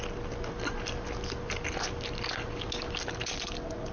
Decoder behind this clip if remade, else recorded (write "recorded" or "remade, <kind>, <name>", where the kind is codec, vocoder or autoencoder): recorded